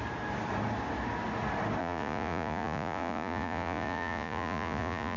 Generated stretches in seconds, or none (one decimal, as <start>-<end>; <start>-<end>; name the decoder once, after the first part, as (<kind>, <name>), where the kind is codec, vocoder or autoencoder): 1.8-5.2 (vocoder, Vocos)